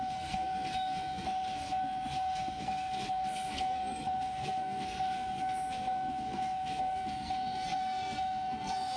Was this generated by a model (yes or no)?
yes